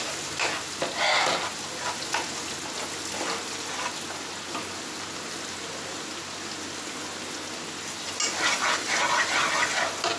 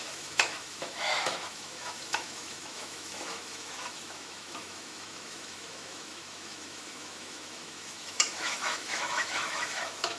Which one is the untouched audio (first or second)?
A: first